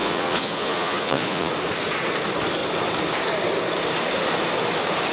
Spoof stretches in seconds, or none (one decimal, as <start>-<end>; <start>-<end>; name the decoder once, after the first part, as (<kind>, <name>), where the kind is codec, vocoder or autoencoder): 0.0-1.5 (vocoder, Vocos)